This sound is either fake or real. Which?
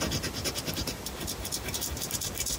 real